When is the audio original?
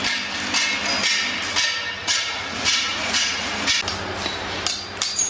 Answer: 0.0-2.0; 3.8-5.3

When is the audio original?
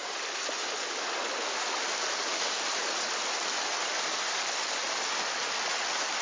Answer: 0.0-6.2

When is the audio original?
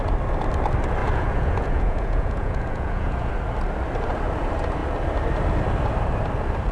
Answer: 0.0-1.0; 3.3-6.7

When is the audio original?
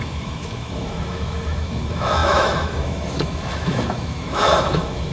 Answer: none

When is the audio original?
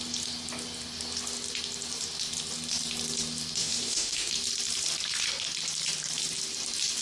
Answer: 0.0-3.6; 4.3-7.0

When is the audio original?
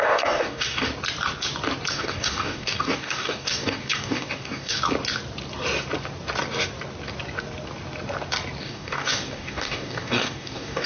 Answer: 0.9-1.9; 4.8-8.6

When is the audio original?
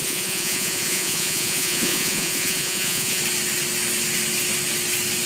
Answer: 3.2-5.3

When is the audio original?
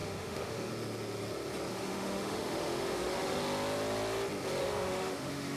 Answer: 0.7-1.7; 3.4-4.6